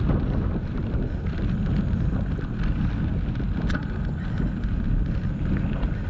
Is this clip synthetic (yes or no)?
no